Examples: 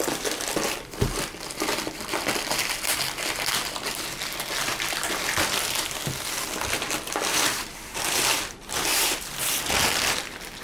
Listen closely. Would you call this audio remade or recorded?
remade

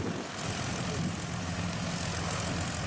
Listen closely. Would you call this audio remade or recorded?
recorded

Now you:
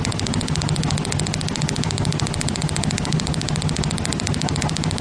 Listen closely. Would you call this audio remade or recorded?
recorded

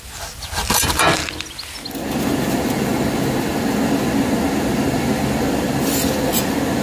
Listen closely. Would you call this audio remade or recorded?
recorded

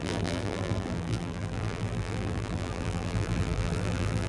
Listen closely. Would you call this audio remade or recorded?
remade